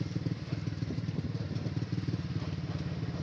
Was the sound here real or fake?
real